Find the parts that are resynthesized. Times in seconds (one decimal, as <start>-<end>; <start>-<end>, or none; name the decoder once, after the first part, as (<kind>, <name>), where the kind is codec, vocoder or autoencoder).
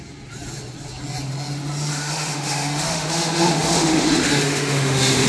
1.9-5.3 (autoencoder, DAC-VAE)